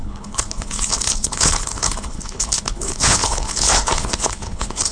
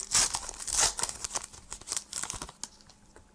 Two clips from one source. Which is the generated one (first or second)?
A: first